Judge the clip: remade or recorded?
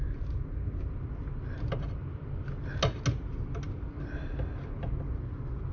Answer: recorded